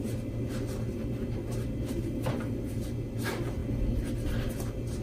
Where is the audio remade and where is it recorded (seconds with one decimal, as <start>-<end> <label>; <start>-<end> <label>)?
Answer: 0.0-5.0 recorded